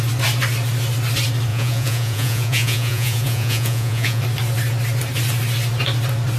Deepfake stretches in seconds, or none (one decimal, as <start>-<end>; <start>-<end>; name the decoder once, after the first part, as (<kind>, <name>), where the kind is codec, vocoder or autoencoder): 1.5-4.2 (vocoder, Vocos)